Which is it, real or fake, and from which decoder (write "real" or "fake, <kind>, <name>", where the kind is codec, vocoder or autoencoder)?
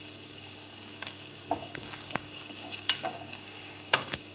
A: fake, codec, DAC